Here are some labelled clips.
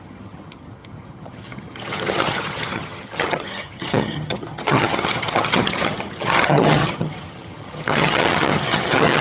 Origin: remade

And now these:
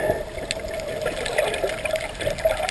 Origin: recorded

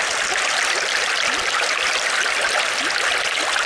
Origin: recorded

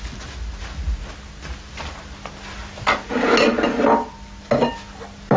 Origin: recorded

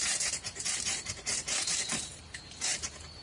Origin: remade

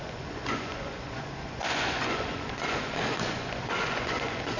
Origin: remade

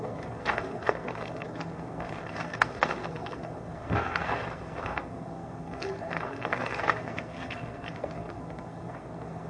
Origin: remade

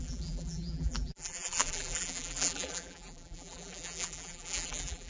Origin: remade